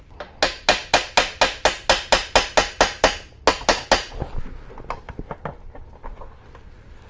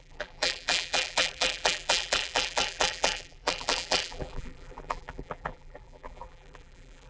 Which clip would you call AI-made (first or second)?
second